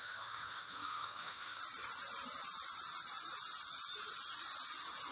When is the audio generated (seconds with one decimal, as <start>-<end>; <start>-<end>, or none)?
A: 0.0-1.6